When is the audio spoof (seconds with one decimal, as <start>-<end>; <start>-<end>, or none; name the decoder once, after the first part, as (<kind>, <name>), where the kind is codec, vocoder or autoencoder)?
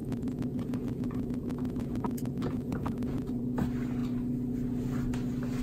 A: 0.0-3.4 (vocoder, Vocos)